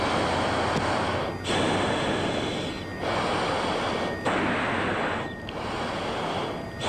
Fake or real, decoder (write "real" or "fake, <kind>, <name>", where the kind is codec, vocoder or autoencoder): real